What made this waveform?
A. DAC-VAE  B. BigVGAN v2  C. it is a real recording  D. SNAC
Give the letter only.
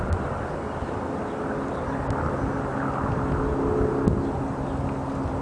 C